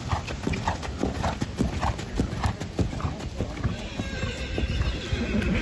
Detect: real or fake real